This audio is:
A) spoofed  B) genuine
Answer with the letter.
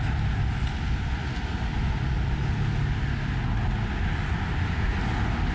B